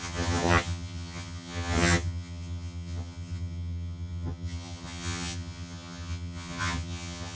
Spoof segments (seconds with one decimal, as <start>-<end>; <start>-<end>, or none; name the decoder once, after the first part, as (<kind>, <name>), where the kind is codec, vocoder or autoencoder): 0.0-7.4 (vocoder, HiFi-GAN)

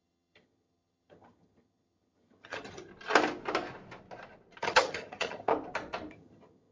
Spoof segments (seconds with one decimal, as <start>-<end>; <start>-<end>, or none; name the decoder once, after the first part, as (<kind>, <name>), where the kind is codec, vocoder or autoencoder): 0.0-2.9 (vocoder, HiFi-GAN); 4.6-5.5; 6.1-6.7

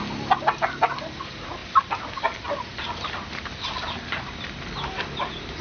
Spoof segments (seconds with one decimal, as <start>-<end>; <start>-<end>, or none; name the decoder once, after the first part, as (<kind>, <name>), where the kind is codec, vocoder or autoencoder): none

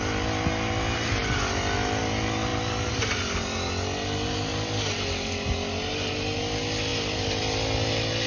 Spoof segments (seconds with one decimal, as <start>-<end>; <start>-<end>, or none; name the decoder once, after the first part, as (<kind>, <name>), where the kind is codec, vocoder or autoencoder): none

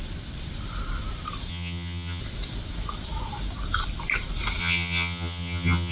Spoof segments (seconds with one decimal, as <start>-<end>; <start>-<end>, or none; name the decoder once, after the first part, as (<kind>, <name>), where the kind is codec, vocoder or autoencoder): 1.5-2.2 (vocoder, HiFi-GAN); 4.6-5.9